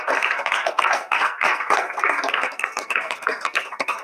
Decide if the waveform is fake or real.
fake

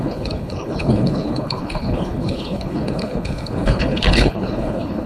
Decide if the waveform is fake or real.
fake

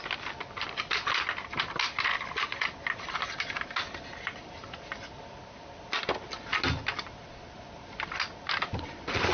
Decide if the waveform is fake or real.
real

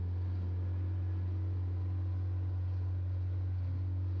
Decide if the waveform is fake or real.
real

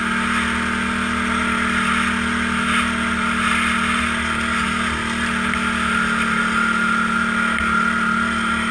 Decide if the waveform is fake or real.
real